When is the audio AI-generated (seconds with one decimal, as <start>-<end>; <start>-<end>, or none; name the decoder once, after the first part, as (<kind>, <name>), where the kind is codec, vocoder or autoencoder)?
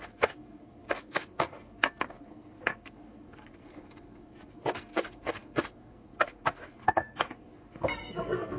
0.0-8.6 (codec, SNAC)